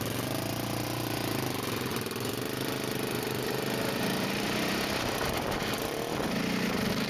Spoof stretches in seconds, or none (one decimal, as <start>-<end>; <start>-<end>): 1.9-6.2